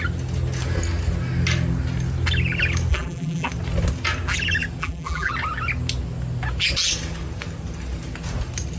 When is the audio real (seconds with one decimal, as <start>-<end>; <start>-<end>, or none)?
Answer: 0.0-2.9; 3.5-4.8; 5.3-8.8